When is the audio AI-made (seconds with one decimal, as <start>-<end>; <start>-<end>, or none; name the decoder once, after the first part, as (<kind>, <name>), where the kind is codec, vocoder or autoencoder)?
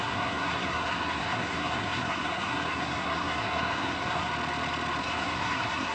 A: 0.0-4.3 (codec, SNAC); 5.0-5.9